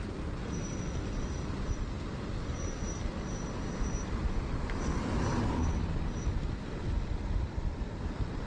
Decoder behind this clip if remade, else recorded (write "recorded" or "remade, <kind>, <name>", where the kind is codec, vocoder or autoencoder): recorded